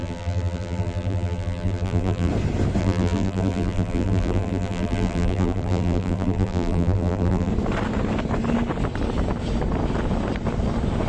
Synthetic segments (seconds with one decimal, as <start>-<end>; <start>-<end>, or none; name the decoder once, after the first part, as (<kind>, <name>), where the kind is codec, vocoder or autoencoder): 0.0-2.3 (vocoder, BigVGAN v2); 2.8-7.5